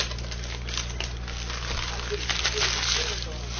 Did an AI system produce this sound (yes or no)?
no